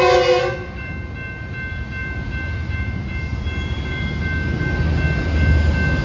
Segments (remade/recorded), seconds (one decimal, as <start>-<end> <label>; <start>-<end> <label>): 0.0-2.0 recorded; 2.0-4.2 remade; 4.2-6.0 recorded